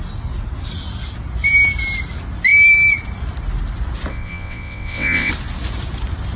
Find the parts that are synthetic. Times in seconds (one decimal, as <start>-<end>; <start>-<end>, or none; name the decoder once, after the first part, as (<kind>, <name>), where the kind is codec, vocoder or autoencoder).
4.1-5.3 (vocoder, WaveNeXt)